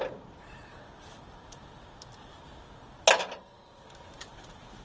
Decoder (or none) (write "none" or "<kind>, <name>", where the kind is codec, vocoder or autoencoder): none